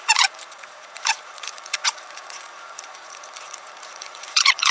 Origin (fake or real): fake